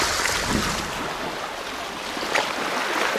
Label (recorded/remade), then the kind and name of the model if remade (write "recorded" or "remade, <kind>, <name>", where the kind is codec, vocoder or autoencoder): recorded